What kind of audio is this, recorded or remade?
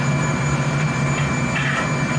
recorded